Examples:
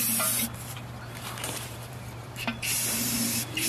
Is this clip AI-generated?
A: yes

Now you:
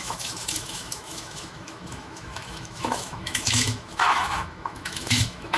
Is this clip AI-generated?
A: yes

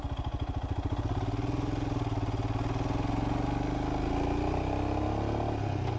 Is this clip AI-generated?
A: no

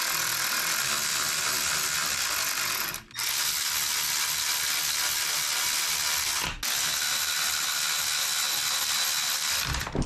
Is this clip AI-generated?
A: no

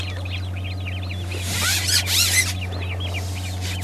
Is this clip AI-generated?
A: no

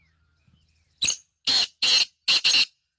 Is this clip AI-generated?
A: no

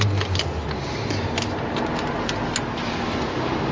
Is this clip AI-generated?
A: no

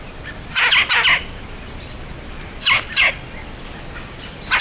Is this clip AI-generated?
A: no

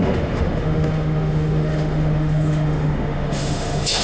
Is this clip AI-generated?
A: yes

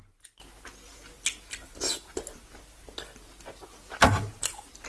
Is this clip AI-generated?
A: no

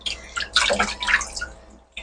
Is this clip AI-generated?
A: no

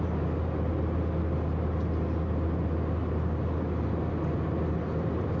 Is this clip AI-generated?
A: no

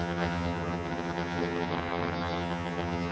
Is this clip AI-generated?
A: yes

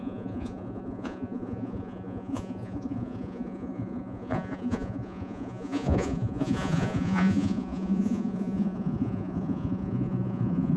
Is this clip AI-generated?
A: yes